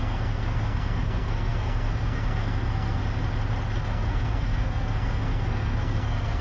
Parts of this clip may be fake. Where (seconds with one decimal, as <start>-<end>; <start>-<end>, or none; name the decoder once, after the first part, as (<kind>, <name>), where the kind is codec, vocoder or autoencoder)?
0.0-3.0 (codec, SNAC); 3.8-6.4